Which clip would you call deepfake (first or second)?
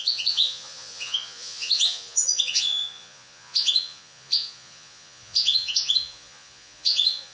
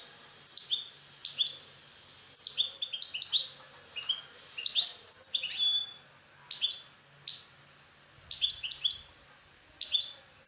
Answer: first